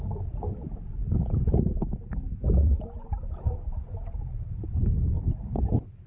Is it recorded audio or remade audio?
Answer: recorded